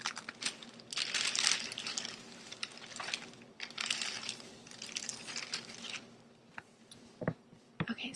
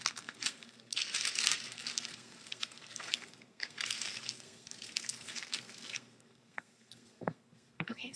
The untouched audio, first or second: first